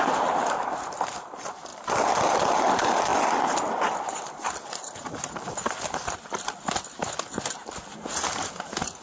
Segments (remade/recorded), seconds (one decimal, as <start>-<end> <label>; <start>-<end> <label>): 0.0-9.0 recorded